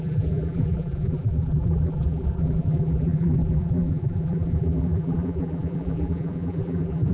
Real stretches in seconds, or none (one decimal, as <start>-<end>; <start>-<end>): none